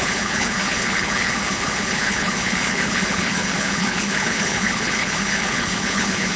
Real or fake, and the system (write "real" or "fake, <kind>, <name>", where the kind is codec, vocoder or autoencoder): fake, codec, HILCodec